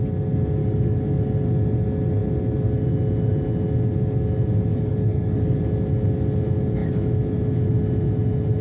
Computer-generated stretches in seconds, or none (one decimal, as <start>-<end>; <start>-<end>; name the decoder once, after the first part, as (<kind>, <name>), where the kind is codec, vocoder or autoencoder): 0.6-1.2 (codec, DAC); 4.7-5.6